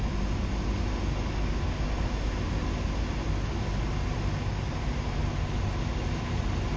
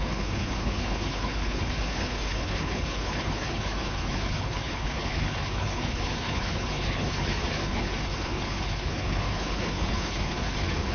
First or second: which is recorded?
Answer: first